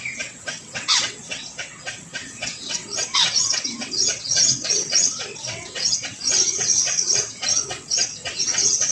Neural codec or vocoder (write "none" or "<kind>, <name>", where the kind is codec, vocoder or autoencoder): vocoder, WaveNeXt